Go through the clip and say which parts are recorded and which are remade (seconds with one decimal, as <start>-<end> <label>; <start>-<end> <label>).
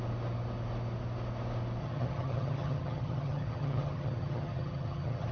0.0-1.8 recorded; 1.8-5.3 remade